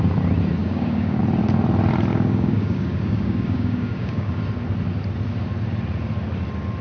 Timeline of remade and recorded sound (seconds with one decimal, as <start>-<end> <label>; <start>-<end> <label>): 0.0-0.6 recorded; 0.6-1.2 remade; 1.2-2.1 recorded; 2.1-4.4 remade; 4.4-6.8 recorded

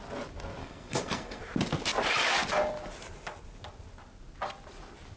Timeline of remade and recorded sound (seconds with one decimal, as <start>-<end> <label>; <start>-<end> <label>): 0.0-0.6 recorded; 0.6-1.4 remade; 1.4-5.2 recorded

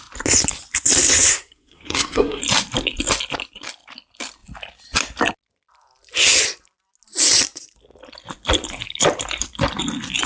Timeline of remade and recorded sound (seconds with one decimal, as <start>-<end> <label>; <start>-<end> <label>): 0.0-1.3 recorded; 1.3-2.4 remade; 2.4-10.3 recorded